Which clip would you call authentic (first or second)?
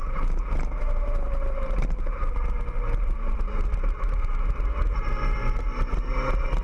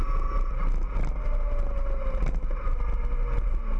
second